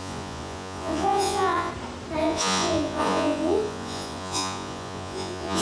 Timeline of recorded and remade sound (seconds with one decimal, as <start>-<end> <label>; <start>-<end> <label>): 0.0-1.7 remade; 1.7-2.2 recorded; 2.2-5.6 remade